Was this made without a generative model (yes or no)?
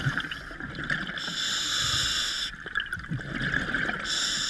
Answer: yes